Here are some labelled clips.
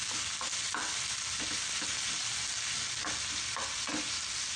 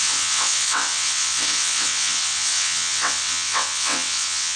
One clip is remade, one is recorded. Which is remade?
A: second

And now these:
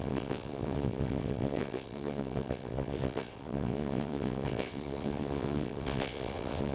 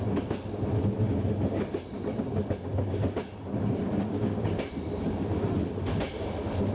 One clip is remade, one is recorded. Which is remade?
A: first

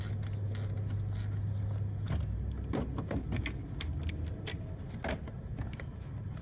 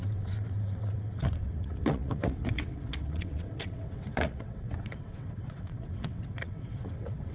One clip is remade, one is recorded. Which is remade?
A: second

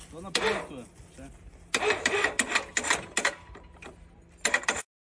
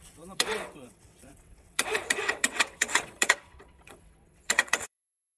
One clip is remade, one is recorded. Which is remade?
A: second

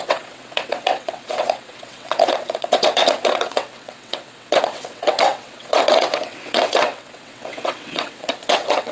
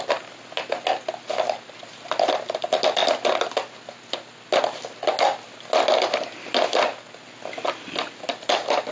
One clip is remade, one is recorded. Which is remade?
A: first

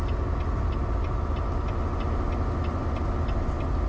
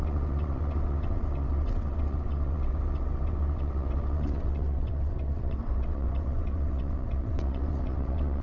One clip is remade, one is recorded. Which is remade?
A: second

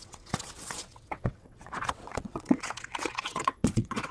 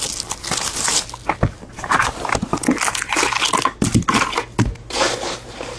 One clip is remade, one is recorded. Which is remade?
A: first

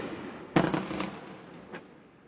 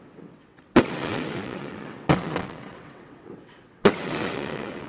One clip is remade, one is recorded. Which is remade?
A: second